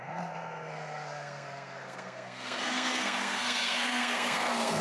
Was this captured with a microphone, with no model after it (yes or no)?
no